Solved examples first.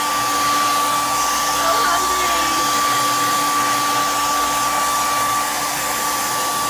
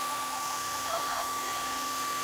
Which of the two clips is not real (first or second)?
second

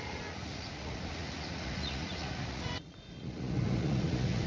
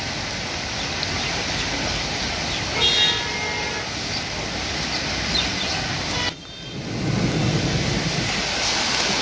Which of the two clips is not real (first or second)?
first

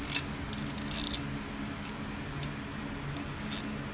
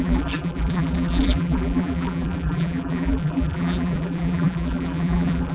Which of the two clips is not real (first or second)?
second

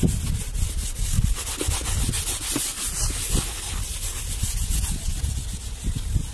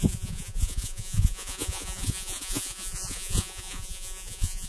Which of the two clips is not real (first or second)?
second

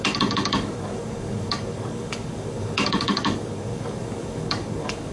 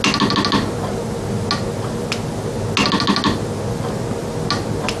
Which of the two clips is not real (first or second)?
first